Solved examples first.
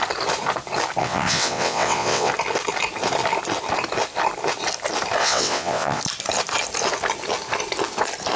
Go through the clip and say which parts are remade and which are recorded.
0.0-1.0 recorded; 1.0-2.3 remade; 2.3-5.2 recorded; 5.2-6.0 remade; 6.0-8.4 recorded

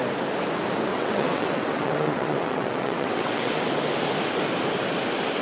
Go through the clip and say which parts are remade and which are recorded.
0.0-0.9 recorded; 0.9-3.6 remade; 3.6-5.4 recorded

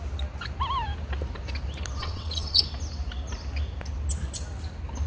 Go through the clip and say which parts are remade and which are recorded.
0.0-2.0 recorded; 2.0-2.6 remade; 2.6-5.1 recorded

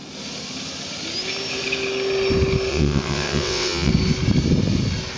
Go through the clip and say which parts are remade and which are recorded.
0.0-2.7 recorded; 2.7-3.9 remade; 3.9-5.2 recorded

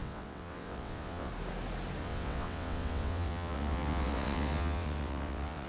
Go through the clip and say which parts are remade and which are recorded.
0.0-1.3 remade; 1.3-2.0 recorded; 2.0-5.7 remade